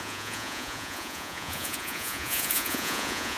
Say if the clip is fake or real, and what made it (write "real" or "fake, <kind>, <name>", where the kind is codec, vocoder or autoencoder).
fake, vocoder, Vocos